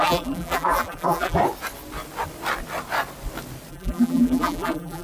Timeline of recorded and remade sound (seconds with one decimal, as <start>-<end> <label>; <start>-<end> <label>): 0.0-1.4 remade; 1.4-3.7 recorded; 3.7-5.0 remade